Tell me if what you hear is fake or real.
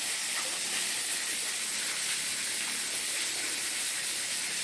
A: real